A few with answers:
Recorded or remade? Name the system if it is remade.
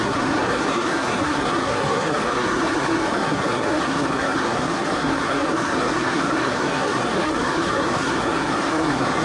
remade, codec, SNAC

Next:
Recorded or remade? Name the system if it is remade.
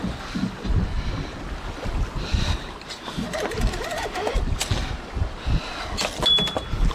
recorded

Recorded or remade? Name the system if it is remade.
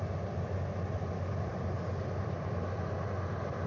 recorded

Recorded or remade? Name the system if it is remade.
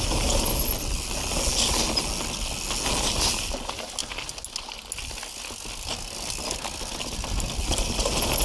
recorded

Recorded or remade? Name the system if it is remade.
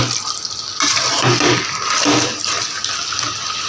recorded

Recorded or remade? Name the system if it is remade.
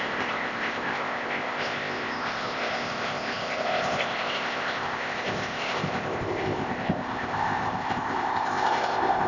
remade, codec, ZipCodec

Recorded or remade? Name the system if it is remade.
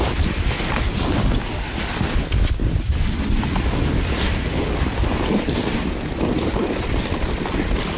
recorded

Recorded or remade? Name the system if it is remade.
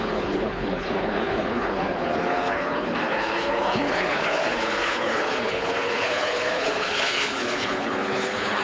remade, codec, HILCodec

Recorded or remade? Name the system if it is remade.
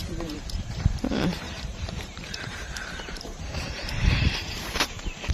remade, vocoder, BigVGAN v2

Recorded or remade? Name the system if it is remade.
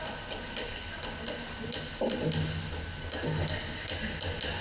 recorded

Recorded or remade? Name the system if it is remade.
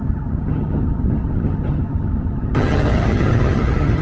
remade, vocoder, HiFi-GAN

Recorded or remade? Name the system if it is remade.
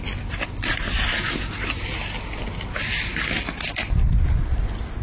recorded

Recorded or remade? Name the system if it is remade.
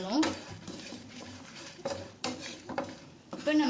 remade, vocoder, BigVGAN v2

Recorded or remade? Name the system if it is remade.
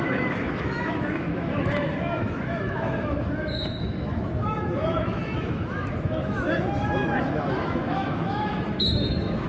remade, autoencoder, DAC-VAE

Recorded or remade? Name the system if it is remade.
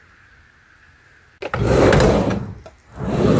recorded